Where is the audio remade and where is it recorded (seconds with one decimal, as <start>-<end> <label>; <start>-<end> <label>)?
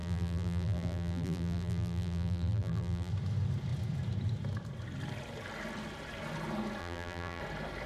0.0-3.1 remade; 3.1-6.8 recorded; 6.8-7.4 remade; 7.4-7.9 recorded